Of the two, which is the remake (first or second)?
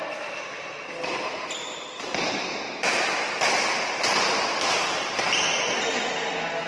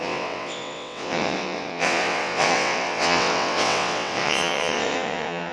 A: second